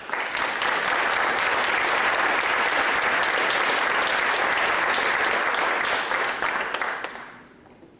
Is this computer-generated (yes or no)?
no